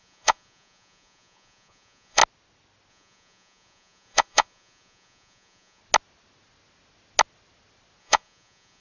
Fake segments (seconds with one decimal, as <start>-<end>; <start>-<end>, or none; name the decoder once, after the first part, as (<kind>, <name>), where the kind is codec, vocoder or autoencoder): 0.0-2.2 (vocoder, Vocos); 2.9-5.8; 8.0-8.8